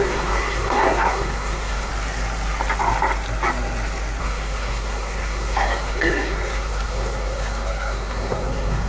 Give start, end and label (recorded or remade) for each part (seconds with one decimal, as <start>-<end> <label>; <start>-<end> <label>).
0.0-1.9 remade; 1.9-4.2 recorded; 4.2-8.9 remade